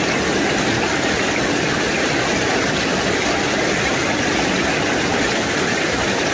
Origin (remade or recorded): recorded